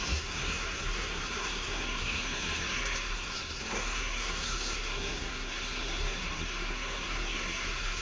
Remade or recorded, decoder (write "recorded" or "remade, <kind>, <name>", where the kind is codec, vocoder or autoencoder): remade, codec, SNAC